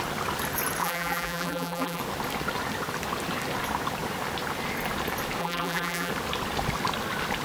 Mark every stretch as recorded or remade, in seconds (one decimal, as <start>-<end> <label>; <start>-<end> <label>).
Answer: 0.0-0.8 recorded; 0.8-2.0 remade; 2.0-5.4 recorded; 5.4-6.1 remade; 6.1-7.4 recorded